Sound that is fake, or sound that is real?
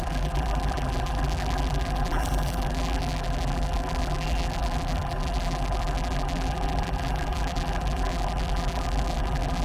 fake